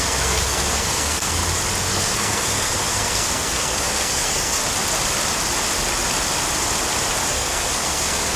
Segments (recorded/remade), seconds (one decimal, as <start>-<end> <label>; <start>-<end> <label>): 0.0-1.4 remade; 1.4-1.9 recorded; 1.9-4.6 remade; 4.6-7.3 recorded; 7.3-8.4 remade